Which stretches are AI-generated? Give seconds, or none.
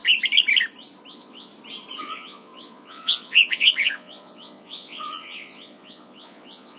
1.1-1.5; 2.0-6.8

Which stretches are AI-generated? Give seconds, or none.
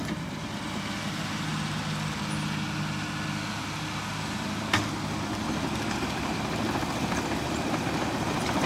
none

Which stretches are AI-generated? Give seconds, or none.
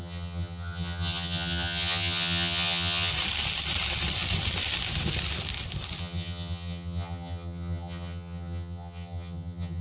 0.0-3.1; 6.0-9.8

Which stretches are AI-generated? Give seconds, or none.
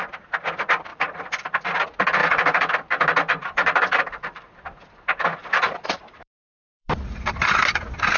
0.9-1.7; 2.2-2.7; 3.4-4.6; 5.4-7.6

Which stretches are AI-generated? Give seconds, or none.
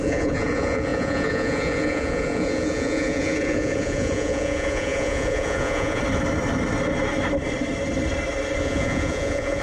0.0-6.0; 8.6-9.6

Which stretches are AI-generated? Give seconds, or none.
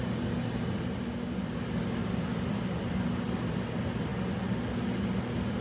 2.0-2.9